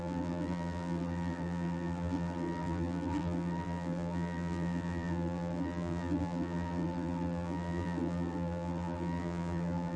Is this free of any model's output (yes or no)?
no